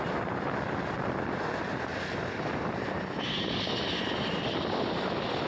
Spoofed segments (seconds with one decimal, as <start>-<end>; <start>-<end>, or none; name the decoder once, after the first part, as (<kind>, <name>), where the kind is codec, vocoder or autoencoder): none